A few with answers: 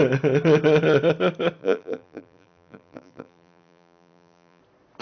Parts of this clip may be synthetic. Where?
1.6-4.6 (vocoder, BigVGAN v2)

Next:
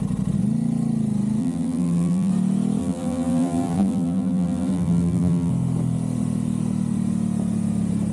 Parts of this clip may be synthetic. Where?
1.4-2.3 (vocoder, BigVGAN v2); 2.8-5.5

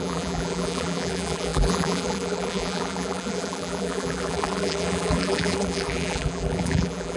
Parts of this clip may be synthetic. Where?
0.0-7.2 (vocoder, BigVGAN v2)

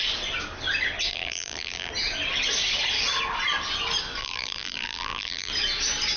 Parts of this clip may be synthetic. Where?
1.1-1.9 (vocoder, BigVGAN v2); 4.2-5.5

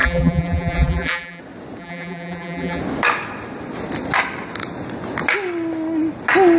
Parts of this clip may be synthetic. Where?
0.0-1.4 (vocoder, BigVGAN v2); 1.8-2.8

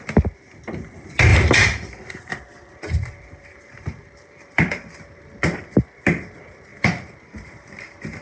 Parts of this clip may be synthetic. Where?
1.3-5.3 (vocoder, BigVGAN v2); 6.7-8.2

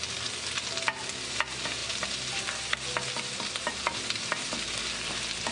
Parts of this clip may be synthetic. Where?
none

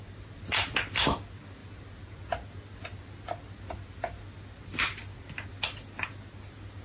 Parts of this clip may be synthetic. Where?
0.0-1.1 (vocoder, BigVGAN v2)